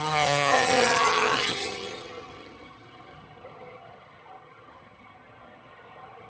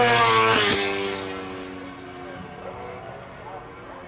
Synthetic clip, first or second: first